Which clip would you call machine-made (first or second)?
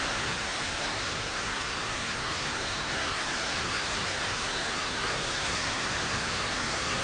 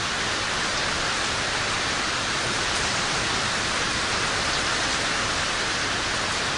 first